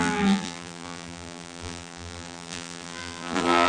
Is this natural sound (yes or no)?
no